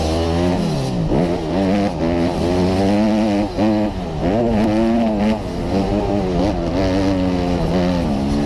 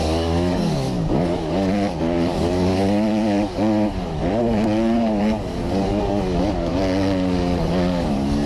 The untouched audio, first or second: first